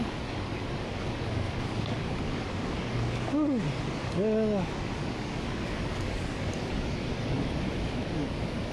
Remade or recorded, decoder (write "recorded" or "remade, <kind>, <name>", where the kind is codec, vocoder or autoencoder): remade, codec, DAC